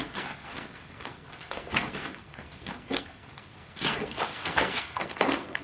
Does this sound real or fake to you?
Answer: fake